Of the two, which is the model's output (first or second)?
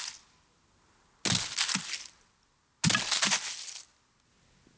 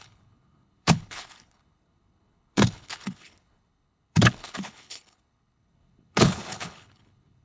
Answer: second